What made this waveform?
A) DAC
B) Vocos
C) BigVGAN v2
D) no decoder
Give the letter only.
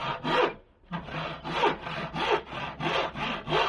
D